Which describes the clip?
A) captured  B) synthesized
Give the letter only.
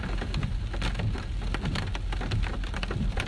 A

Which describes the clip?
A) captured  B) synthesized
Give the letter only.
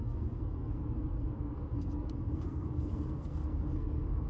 B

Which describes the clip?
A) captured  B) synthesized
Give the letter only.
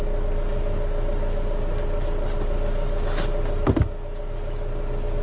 A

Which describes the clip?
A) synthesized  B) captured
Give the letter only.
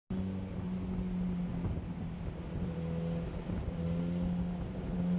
B